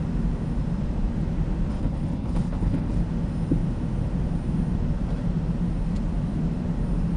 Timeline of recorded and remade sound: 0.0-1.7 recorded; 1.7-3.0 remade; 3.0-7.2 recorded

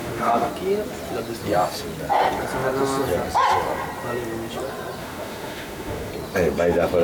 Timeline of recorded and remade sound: 0.0-0.5 remade; 0.5-5.0 recorded; 5.0-6.1 remade; 6.1-7.0 recorded

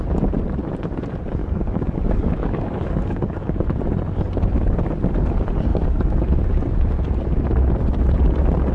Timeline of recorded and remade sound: 0.0-1.4 recorded; 1.4-3.5 remade; 3.5-5.7 recorded; 5.7-6.2 remade; 6.2-8.7 recorded